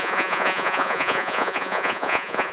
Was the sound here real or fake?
fake